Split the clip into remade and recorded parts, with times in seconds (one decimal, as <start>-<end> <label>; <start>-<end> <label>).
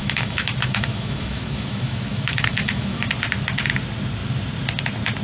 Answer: 0.0-3.1 remade; 3.1-5.2 recorded